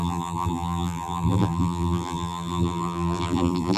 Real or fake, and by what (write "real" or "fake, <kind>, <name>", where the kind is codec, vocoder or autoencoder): fake, vocoder, BigVGAN v2